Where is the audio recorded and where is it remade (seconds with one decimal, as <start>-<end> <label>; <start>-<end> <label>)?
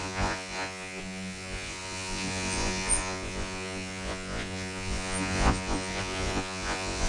0.0-7.1 remade